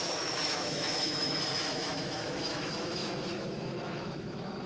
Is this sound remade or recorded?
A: remade